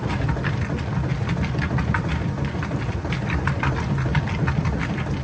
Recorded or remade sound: remade